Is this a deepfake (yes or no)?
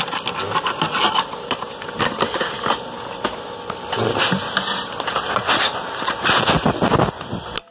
no